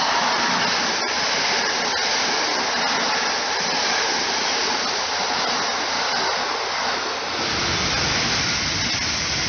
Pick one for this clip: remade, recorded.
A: recorded